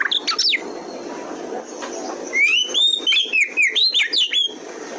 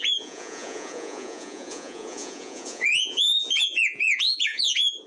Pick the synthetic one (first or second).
second